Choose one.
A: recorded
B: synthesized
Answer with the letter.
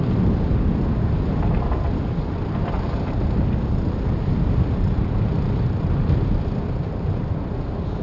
A